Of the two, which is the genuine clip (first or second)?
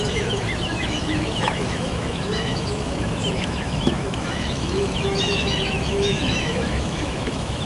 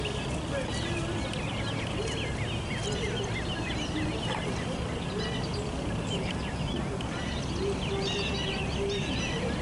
second